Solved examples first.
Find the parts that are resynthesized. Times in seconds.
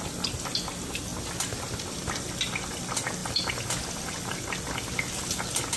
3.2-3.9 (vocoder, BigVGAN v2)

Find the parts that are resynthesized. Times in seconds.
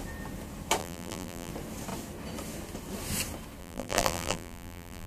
0.8-1.5 (vocoder, BigVGAN v2); 3.6-5.1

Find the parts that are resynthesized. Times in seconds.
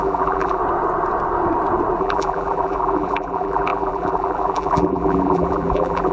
0.0-0.6 (vocoder, BigVGAN v2); 2.0-6.1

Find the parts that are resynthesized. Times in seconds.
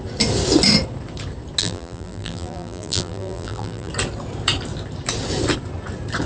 1.6-3.9 (vocoder, BigVGAN v2)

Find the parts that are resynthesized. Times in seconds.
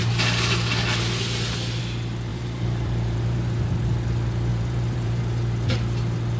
2.3-3.7 (vocoder, BigVGAN v2); 4.5-5.2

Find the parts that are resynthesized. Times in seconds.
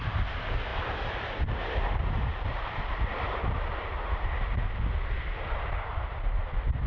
0.7-4.8 (vocoder, BigVGAN v2); 5.9-6.4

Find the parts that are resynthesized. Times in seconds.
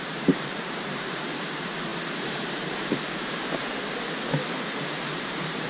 0.0-3.6 (vocoder, BigVGAN v2); 5.1-5.7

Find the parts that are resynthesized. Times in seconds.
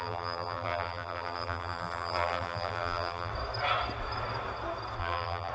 0.0-3.3 (vocoder, BigVGAN v2); 5.0-5.5